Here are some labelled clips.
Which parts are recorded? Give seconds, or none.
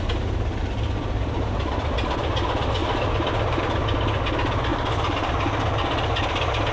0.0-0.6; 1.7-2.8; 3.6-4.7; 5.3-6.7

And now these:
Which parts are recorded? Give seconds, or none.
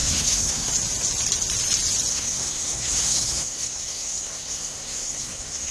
0.7-2.1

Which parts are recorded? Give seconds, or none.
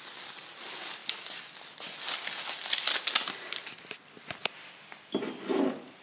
0.0-6.0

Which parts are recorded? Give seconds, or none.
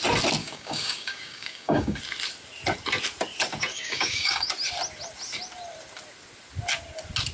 0.0-0.4; 2.0-3.7; 4.5-7.3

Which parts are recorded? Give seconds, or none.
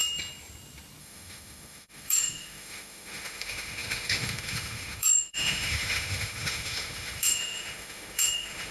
0.0-1.0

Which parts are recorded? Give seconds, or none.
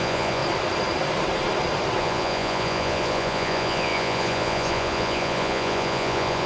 0.4-2.0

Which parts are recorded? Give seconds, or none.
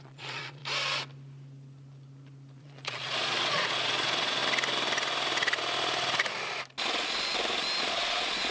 0.6-2.6; 4.4-7.8